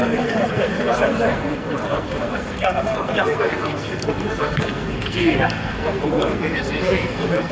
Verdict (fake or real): fake